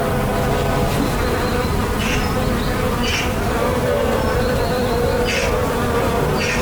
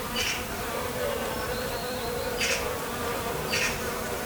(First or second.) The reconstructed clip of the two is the second